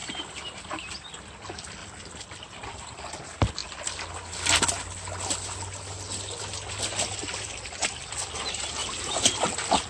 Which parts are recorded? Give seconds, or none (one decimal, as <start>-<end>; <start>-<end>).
0.0-1.8; 2.9-8.8; 9.4-9.9